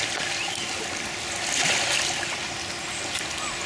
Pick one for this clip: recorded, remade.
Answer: recorded